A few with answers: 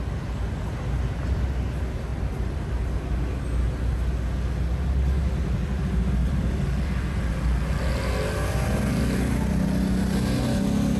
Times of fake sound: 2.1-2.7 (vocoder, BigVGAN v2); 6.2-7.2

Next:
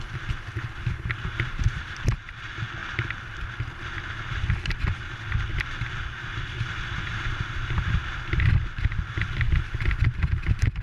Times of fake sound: 2.8-3.5 (vocoder, BigVGAN v2); 8.0-9.4

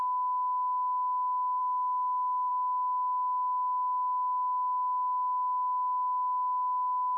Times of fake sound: none

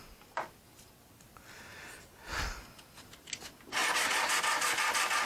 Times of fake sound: 2.3-3.3 (vocoder, BigVGAN v2)

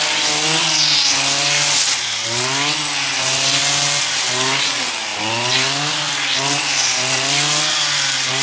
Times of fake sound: none

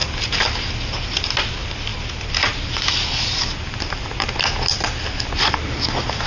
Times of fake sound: 0.8-6.3 (vocoder, BigVGAN v2)